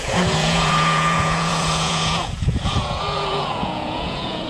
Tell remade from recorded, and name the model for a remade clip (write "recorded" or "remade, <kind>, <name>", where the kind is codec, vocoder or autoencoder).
remade, vocoder, Vocos